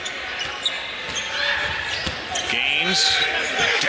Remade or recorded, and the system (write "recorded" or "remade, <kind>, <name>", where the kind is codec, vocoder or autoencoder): recorded